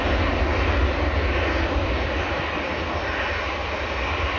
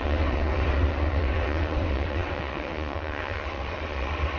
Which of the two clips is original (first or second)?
first